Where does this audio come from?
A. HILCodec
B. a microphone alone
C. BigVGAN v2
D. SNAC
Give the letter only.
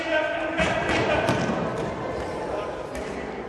B